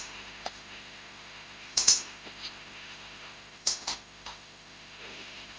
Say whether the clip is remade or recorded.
remade